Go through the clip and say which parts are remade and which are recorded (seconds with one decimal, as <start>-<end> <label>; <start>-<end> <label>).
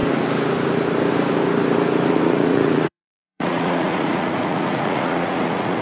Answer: 0.0-2.1 recorded; 2.1-5.8 remade